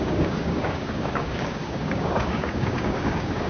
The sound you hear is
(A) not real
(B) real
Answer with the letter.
A